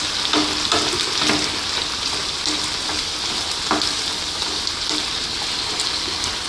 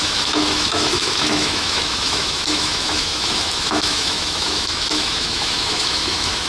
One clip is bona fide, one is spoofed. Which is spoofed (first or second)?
second